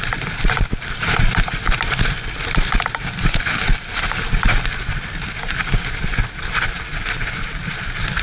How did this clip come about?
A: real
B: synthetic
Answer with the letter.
A